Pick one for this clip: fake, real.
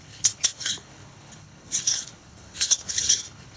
fake